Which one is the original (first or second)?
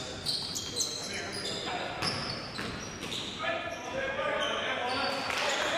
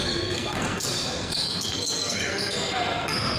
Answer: first